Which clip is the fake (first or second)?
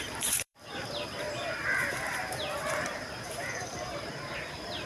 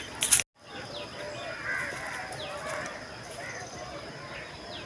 first